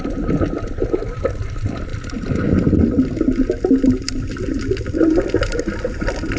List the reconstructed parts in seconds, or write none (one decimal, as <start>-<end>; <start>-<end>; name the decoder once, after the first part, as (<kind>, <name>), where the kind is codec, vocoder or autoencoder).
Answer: none